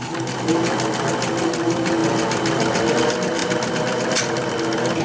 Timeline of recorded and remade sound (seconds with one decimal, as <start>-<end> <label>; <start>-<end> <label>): 0.0-5.0 recorded